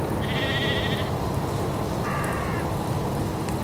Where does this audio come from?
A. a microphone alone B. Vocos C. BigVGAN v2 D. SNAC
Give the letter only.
A